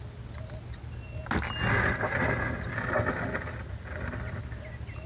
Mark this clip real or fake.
real